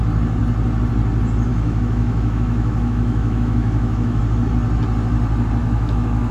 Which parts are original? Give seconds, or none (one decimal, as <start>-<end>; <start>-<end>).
0.0-1.5; 4.2-5.6